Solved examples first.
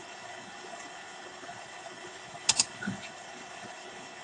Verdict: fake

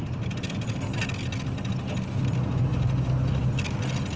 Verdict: real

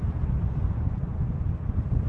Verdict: real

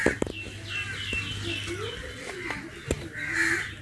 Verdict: real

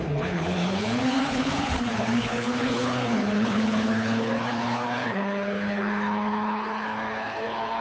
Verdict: fake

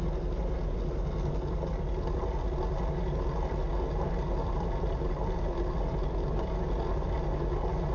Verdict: real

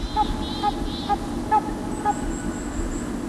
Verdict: real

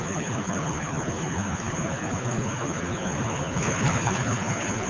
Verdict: fake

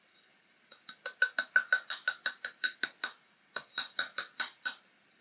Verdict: real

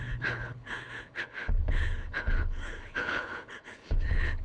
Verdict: fake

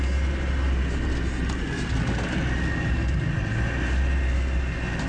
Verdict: real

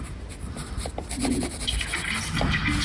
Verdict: real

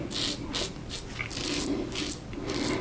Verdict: real